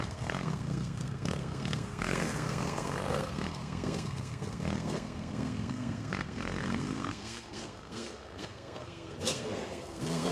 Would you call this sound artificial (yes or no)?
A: yes